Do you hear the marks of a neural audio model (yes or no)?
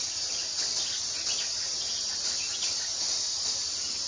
no